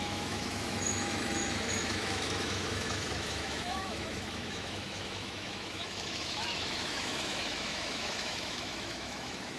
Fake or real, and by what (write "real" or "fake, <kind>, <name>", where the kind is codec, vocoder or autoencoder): fake, autoencoder, DAC-VAE